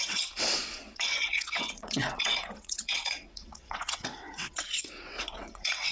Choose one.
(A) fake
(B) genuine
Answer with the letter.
A